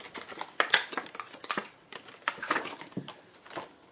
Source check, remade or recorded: recorded